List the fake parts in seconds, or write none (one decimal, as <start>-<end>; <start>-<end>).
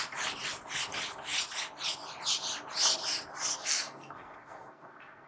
3.5-5.3